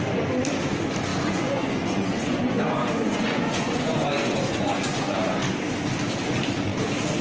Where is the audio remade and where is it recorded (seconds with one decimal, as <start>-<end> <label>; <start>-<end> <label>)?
0.0-1.1 recorded; 1.1-5.4 remade; 5.4-7.2 recorded